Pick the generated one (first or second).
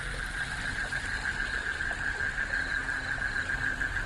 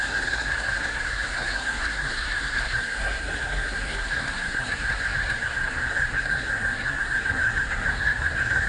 second